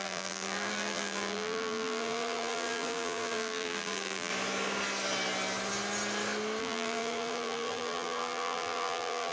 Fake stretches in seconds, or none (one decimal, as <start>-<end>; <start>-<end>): 0.0-4.3; 6.6-9.3